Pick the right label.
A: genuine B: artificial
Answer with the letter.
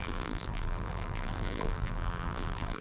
B